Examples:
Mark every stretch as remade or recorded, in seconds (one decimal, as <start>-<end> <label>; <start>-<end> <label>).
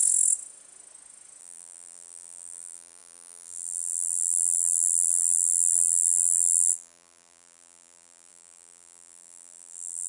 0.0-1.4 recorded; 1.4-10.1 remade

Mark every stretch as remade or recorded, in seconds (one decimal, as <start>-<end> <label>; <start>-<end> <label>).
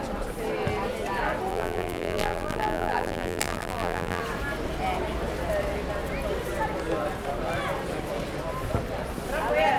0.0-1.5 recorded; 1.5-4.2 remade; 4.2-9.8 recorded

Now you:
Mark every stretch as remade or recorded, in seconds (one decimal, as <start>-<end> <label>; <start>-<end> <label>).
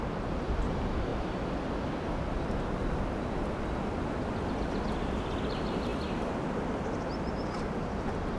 0.0-1.1 remade; 1.1-5.5 recorded; 5.5-5.9 remade; 5.9-7.3 recorded; 7.3-8.4 remade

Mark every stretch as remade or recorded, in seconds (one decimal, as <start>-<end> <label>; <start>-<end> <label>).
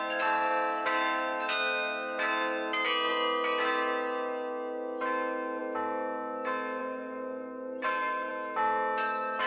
0.0-6.8 recorded; 6.8-8.3 remade; 8.3-9.5 recorded